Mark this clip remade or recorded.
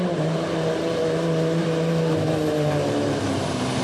remade